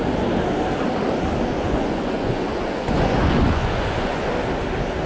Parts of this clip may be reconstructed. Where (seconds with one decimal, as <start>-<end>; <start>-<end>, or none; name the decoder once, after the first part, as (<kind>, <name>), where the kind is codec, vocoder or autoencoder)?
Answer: 1.5-4.3 (vocoder, Vocos)